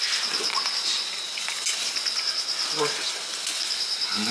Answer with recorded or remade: recorded